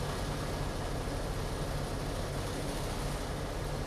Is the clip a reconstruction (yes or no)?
no